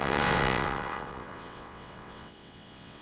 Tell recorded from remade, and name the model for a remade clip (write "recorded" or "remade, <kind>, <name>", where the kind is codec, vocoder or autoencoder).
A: remade, vocoder, WaveNeXt